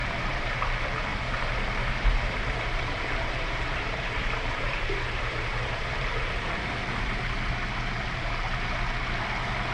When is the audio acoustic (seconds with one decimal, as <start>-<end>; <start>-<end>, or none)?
0.5-1.1; 6.1-9.7